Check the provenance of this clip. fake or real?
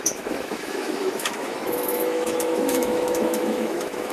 fake